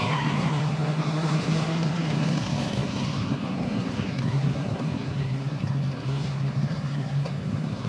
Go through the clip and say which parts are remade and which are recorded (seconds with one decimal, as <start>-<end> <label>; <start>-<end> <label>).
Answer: 0.0-7.9 remade